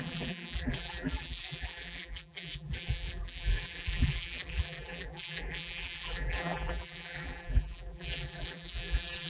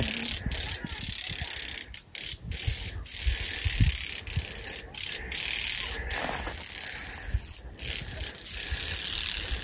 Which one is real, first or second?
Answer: second